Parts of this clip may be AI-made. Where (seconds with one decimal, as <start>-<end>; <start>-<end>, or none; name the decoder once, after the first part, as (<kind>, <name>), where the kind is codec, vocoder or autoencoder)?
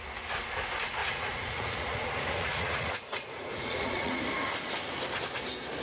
1.0-4.2 (vocoder, Vocos)